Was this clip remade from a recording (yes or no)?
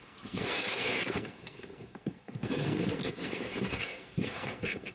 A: yes